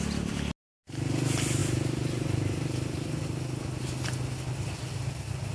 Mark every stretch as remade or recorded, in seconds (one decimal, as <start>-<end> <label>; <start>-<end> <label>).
0.0-5.5 recorded